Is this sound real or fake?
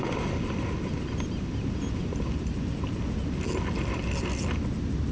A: real